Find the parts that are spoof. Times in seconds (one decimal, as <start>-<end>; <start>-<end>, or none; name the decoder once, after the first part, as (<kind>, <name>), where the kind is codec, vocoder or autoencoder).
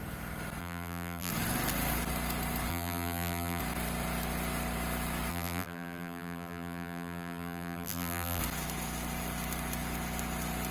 0.6-1.3 (vocoder, BigVGAN v2); 2.7-3.6; 5.3-8.4